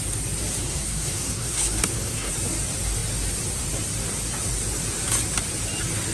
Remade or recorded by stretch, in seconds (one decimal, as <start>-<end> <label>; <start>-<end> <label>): 0.0-0.6 recorded; 0.6-2.3 remade; 2.3-6.1 recorded